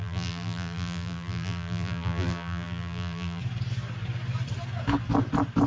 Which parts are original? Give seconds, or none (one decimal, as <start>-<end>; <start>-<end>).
3.4-5.7